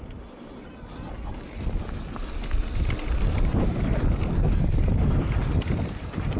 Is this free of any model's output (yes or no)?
yes